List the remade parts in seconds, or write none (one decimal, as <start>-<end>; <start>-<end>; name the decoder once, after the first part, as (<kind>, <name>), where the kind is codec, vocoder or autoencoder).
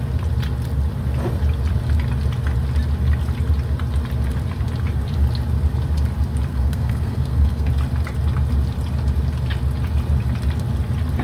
6.5-7.7 (codec, SNAC)